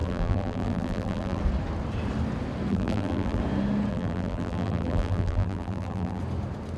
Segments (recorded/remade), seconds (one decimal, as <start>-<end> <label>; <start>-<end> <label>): 0.0-1.4 remade; 1.4-2.7 recorded; 2.7-3.4 remade; 3.4-3.9 recorded; 3.9-6.2 remade; 6.2-6.8 recorded